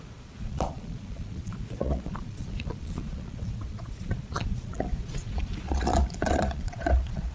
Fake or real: fake